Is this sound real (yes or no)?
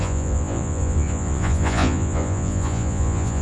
no